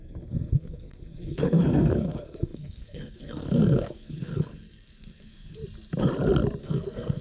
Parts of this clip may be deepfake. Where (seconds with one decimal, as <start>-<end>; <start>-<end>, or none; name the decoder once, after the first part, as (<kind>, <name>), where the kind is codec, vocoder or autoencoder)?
0.0-5.6 (codec, SNAC); 6.6-7.2

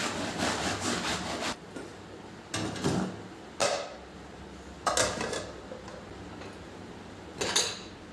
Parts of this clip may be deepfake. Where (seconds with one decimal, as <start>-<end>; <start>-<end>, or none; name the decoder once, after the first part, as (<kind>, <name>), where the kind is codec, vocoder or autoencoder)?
none

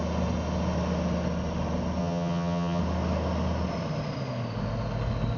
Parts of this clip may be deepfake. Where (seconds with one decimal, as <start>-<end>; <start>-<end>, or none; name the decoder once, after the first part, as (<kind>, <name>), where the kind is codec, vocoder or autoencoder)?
2.0-2.8 (vocoder, HiFi-GAN)

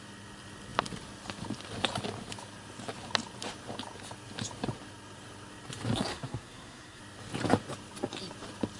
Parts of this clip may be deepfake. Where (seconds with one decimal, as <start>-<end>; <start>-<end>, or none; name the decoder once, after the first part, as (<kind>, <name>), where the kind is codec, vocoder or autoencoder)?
6.1-7.0 (codec, SNAC)

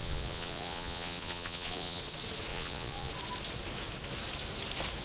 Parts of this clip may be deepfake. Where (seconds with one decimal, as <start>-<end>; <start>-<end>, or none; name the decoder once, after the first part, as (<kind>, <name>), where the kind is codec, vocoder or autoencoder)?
0.0-2.0 (vocoder, Vocos); 2.5-3.1

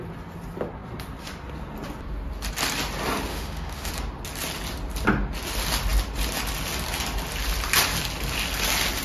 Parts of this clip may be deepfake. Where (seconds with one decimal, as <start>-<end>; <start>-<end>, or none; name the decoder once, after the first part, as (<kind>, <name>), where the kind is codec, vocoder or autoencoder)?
3.3-3.9 (autoencoder, DAC-VAE)